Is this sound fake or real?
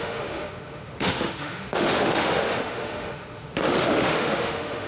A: fake